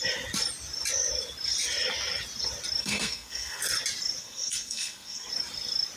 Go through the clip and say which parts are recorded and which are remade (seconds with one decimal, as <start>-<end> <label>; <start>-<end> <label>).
0.0-2.8 recorded; 2.8-3.6 remade; 3.6-4.2 recorded; 4.2-5.3 remade; 5.3-6.0 recorded